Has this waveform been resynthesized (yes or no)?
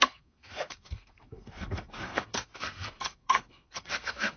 yes